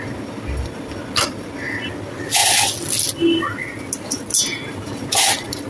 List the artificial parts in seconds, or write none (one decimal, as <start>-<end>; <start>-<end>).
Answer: none